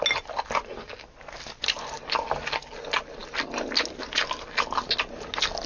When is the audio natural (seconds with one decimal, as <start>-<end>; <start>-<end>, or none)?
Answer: 0.0-5.7